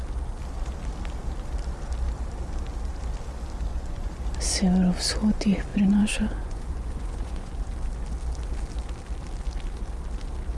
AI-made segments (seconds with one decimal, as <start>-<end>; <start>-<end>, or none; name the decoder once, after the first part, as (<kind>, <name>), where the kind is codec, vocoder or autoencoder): 3.7-4.2 (vocoder, Vocos); 5.7-7.5